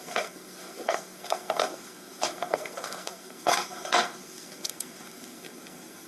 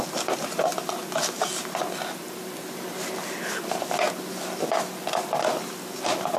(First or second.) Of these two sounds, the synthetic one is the first